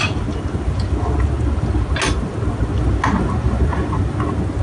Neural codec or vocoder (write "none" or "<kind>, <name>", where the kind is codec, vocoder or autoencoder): none